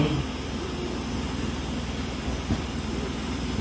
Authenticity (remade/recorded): recorded